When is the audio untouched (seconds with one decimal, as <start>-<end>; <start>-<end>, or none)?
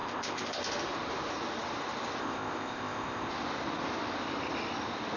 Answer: 0.6-2.2; 3.3-5.2